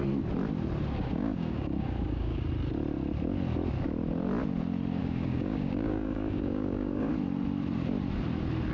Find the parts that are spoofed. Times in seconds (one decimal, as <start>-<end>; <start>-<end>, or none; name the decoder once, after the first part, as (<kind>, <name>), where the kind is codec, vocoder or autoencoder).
1.1-2.4 (codec, DAC); 5.0-7.1